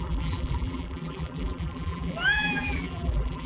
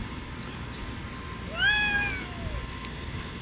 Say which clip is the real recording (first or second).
second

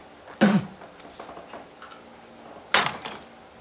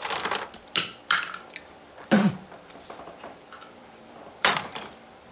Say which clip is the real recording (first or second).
first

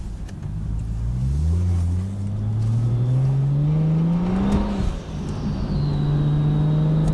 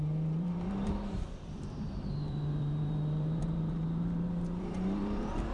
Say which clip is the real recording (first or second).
first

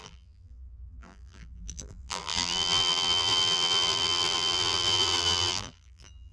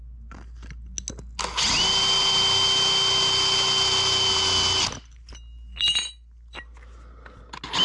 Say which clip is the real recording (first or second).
second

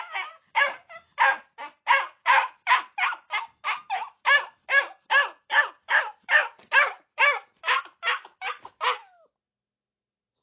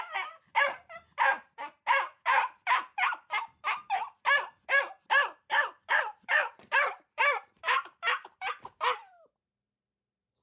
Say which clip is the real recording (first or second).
first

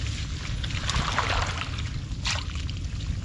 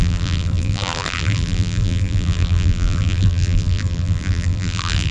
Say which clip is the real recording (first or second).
first